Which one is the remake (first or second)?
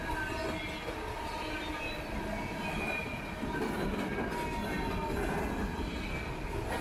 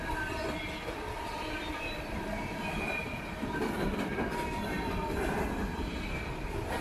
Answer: second